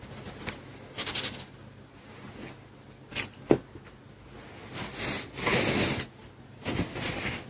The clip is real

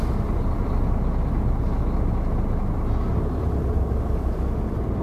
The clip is real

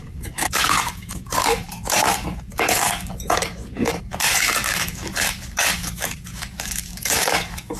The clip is fake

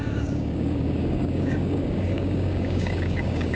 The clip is fake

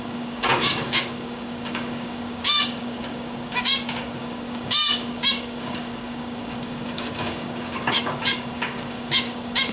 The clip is fake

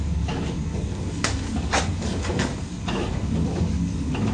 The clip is fake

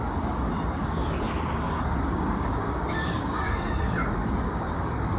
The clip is fake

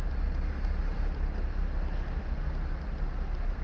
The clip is real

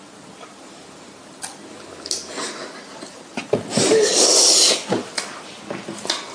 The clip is real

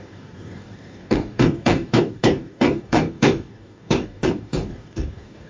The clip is fake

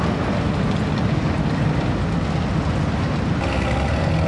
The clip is real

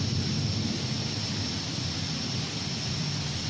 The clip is real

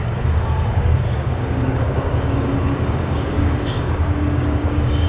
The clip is fake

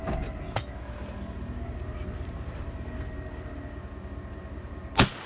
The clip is real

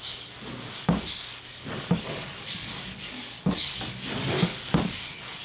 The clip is fake